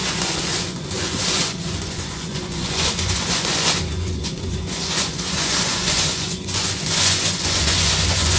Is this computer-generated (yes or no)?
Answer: yes